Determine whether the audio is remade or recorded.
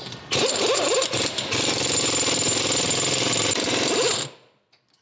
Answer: recorded